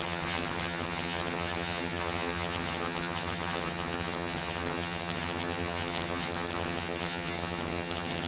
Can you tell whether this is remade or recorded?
remade